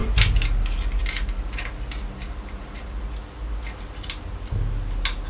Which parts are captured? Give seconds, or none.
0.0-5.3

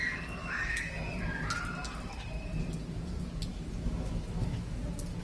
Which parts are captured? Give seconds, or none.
0.0-0.4; 1.0-3.5; 4.8-5.2